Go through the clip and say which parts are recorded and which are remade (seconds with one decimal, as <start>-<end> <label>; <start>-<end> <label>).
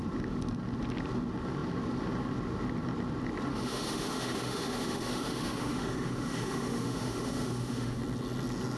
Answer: 0.0-3.5 recorded; 3.5-8.0 remade; 8.0-8.8 recorded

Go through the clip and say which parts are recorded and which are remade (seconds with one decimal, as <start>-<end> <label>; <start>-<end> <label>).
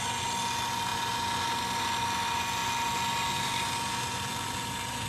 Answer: 0.0-5.1 recorded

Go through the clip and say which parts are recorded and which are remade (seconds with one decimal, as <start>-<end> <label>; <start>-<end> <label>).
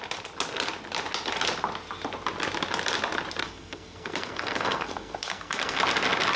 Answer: 0.0-3.4 recorded; 3.4-5.8 remade; 5.8-6.4 recorded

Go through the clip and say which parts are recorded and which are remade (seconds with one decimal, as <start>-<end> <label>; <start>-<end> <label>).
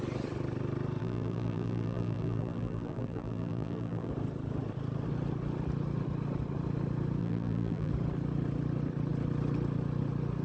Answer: 0.0-1.0 recorded; 1.0-4.1 remade; 4.1-7.2 recorded; 7.2-7.9 remade; 7.9-10.4 recorded